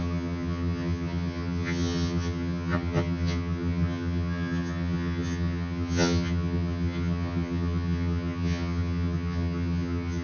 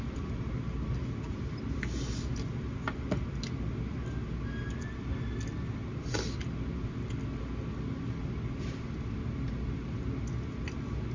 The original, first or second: second